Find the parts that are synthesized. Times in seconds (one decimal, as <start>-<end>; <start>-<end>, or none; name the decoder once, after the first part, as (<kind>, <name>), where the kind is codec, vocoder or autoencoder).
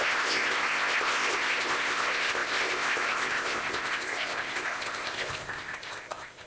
0.0-6.5 (codec, ZipCodec)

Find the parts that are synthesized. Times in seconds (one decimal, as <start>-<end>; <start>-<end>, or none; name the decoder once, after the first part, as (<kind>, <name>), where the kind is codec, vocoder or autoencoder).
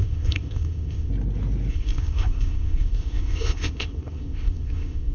0.0-1.1 (codec, ZipCodec); 1.7-5.1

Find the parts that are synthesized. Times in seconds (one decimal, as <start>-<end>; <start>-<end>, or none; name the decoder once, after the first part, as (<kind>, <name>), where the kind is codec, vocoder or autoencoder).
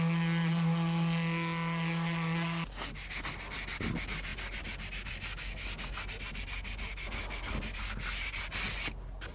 none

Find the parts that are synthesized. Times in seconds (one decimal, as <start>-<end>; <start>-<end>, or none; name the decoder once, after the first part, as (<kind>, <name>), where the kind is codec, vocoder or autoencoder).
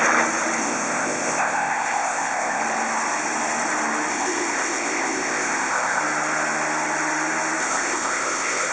0.6-2.6 (codec, ZipCodec); 4.1-6.0; 7.6-8.7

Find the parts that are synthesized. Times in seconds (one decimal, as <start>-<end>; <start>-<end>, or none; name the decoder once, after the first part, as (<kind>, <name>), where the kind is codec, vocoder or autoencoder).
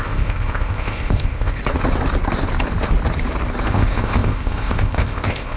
0.0-1.6 (codec, ZipCodec); 3.7-5.6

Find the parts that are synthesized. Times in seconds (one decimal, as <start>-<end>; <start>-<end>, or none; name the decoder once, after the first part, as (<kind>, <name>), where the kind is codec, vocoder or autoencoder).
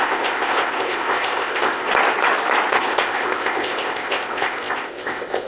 0.0-1.9 (codec, ZipCodec); 2.7-5.5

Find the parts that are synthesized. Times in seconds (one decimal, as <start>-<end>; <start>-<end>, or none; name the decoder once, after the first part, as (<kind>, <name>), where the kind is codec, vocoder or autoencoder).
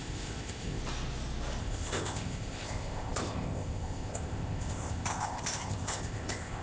0.0-0.8 (codec, ZipCodec); 1.6-6.6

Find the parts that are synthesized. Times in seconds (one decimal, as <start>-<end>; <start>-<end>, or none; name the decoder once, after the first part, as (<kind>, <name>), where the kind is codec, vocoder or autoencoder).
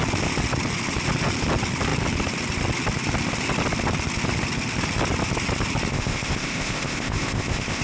5.9-7.8 (codec, ZipCodec)